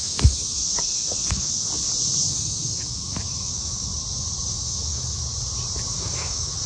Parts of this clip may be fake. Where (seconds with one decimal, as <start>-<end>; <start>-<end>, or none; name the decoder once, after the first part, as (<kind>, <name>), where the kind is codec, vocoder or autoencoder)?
0.0-1.7 (autoencoder, DAC-VAE); 2.3-3.9; 4.5-5.2; 5.9-6.7